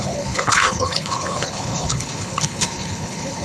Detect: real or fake fake